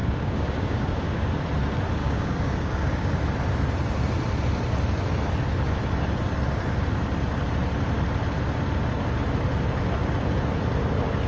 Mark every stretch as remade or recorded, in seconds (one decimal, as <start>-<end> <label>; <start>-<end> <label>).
0.0-1.3 remade; 1.3-2.0 recorded; 2.0-3.2 remade; 3.2-11.3 recorded